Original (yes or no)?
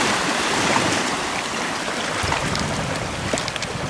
no